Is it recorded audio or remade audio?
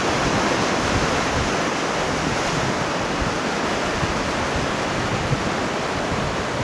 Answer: recorded